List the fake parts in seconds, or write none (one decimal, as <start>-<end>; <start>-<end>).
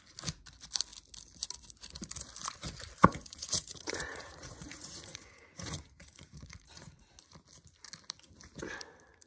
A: 3.0-7.0